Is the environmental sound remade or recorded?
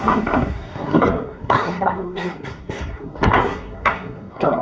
remade